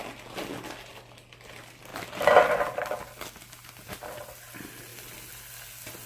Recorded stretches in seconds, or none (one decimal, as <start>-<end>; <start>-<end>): 0.0-6.1